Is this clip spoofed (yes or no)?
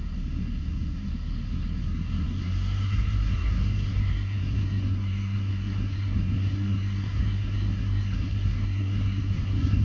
yes